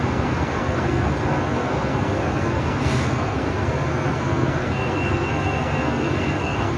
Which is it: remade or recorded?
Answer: remade